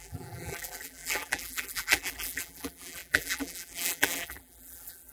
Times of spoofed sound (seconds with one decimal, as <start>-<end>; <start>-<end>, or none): 0.0-5.1